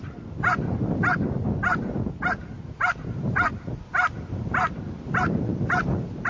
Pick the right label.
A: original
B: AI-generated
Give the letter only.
A